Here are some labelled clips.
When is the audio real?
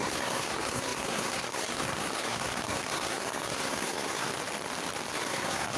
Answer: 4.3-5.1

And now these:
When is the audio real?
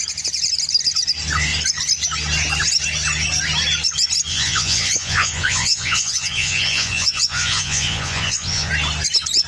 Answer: 0.0-4.3; 8.7-9.5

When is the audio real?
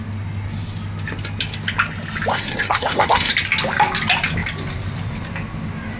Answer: 0.0-2.3; 3.3-6.0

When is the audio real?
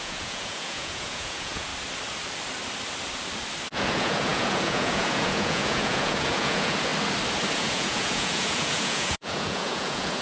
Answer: 1.7-3.7; 6.9-7.5